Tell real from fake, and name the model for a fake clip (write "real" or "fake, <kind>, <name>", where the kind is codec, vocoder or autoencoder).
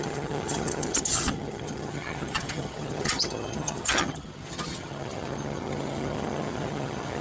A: fake, vocoder, HiFi-GAN